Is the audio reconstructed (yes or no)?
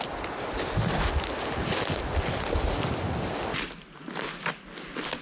no